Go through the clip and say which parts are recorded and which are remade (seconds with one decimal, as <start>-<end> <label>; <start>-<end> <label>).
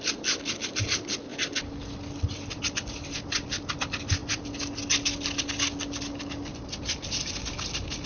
0.0-8.1 recorded